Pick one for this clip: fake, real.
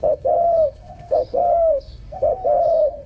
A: fake